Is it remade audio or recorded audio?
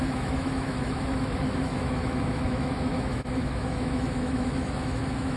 remade